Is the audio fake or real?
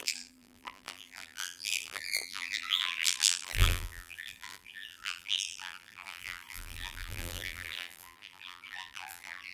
fake